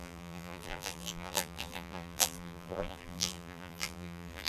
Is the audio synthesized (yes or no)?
yes